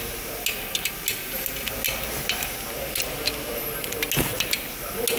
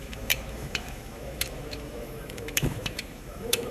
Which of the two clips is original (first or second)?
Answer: first